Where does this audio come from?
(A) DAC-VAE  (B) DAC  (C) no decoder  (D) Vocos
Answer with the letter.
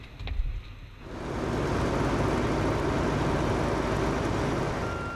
C